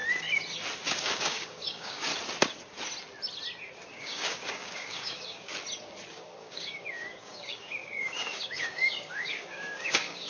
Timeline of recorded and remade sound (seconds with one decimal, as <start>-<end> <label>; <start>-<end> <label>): 0.0-1.0 recorded; 1.0-2.1 remade; 2.1-3.9 recorded; 3.9-5.5 remade; 5.5-6.1 recorded; 6.1-10.3 remade